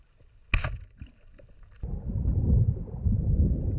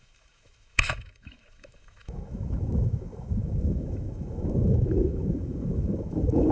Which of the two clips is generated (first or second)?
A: second